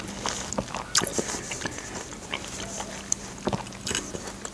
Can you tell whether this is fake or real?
real